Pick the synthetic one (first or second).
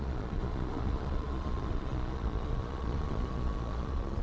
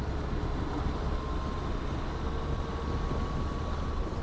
first